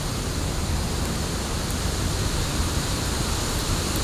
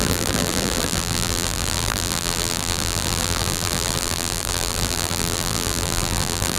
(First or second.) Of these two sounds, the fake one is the second